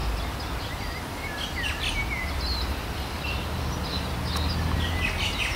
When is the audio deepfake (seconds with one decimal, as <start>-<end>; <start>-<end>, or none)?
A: none